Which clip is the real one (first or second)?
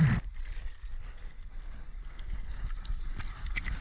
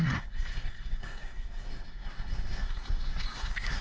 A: first